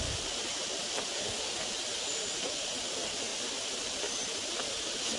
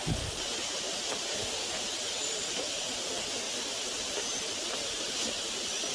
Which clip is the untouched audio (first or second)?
second